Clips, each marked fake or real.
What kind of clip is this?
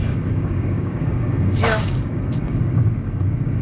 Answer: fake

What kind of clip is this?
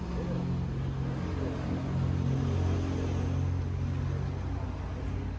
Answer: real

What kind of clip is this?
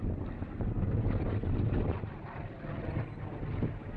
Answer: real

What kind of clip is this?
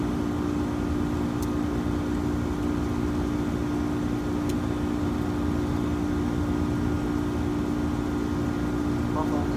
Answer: real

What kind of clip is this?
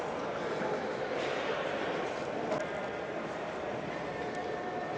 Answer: real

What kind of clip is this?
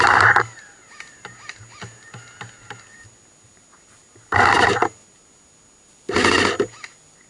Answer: real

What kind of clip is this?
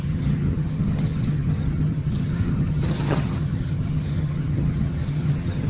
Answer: fake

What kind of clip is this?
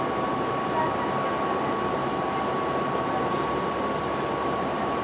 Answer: real